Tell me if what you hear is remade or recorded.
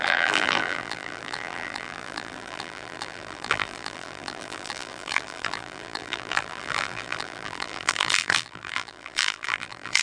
remade